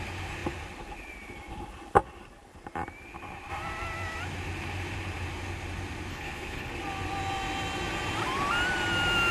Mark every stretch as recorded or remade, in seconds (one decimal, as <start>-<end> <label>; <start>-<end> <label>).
0.0-6.1 recorded; 6.1-6.7 remade; 6.7-9.3 recorded